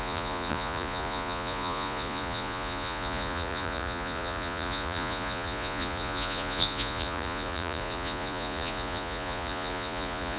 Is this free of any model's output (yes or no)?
no